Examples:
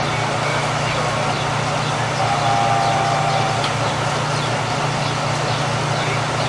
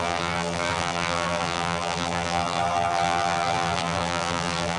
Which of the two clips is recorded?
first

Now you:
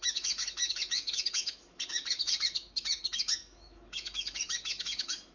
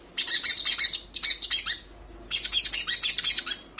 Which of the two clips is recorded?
second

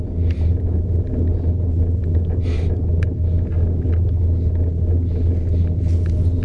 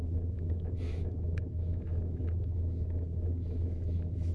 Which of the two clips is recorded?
first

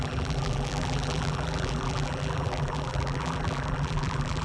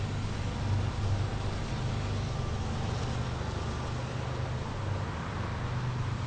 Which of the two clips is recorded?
second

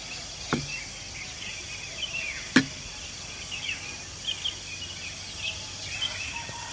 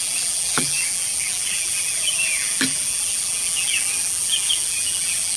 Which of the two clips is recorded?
first